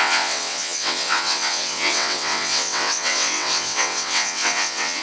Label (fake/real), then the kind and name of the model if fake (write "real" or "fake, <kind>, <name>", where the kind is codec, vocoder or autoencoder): fake, vocoder, WaveNeXt